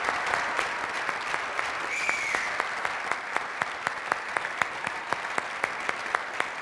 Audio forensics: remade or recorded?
recorded